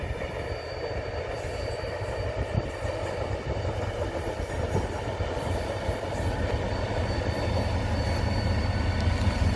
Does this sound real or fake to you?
real